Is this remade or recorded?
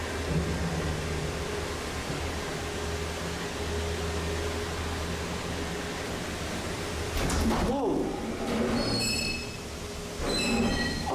recorded